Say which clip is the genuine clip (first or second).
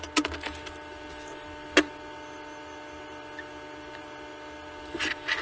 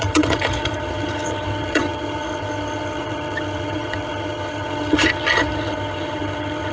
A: first